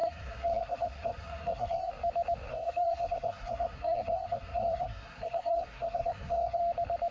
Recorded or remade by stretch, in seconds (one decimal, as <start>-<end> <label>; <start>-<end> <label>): 0.0-1.9 remade; 1.9-2.5 recorded; 2.5-6.6 remade; 6.6-7.1 recorded